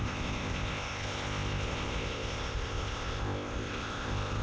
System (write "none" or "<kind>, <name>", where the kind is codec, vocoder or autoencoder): codec, ZipCodec